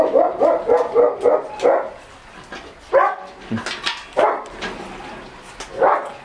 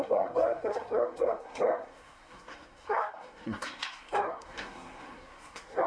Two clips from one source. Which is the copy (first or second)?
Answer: second